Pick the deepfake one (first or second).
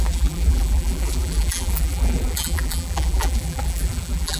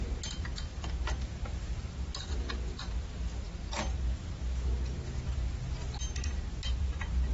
first